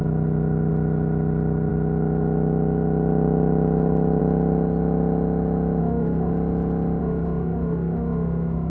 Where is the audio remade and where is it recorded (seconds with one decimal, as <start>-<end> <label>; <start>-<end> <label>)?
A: 0.0-5.8 recorded; 5.8-6.3 remade; 6.3-7.0 recorded; 7.0-8.7 remade